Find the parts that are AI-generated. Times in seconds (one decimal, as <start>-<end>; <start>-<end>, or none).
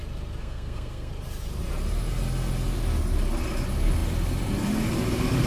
0.4-1.1